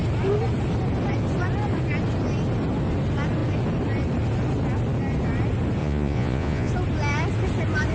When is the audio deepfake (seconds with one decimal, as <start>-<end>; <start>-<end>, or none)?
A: 5.8-6.7